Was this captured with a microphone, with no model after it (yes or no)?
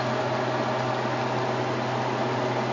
yes